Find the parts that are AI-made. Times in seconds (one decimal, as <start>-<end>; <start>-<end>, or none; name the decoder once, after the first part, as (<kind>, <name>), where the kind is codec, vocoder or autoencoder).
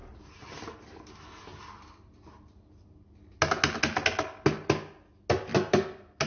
none